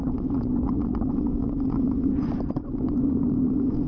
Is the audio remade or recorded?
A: remade